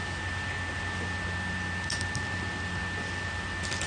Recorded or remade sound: recorded